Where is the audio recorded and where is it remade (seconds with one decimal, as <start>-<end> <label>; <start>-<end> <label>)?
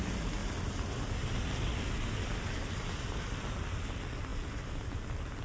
0.0-5.4 recorded